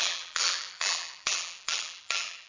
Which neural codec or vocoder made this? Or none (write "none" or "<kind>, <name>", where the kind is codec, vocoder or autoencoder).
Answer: vocoder, BigVGAN v2